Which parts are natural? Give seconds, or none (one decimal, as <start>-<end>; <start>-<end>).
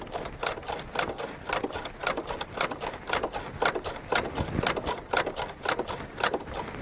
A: 0.0-6.8